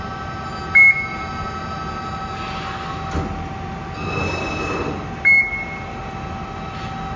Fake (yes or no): no